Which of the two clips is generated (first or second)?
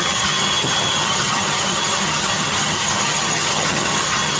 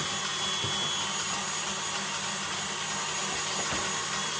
first